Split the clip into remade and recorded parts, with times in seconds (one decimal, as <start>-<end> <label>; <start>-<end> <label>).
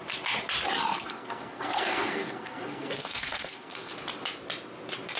0.0-0.9 recorded; 0.9-3.9 remade; 3.9-5.2 recorded